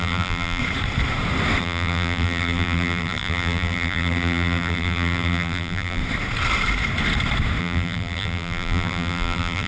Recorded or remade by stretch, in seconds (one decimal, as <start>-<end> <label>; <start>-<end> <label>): 0.0-0.6 remade; 0.6-1.6 recorded; 1.6-6.0 remade; 6.0-7.6 recorded; 7.6-9.7 remade